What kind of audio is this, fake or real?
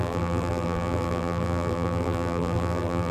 fake